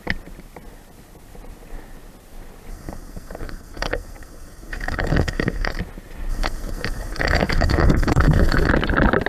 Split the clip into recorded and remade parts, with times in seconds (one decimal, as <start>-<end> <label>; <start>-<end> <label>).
0.0-2.7 recorded; 2.7-5.8 remade; 5.8-6.3 recorded; 6.3-8.7 remade; 8.7-9.3 recorded